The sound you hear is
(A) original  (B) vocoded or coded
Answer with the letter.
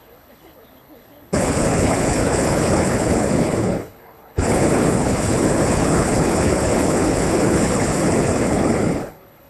B